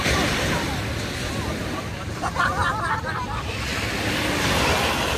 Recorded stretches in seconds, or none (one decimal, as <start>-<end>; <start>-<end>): 0.0-1.6; 3.0-3.7; 4.4-5.2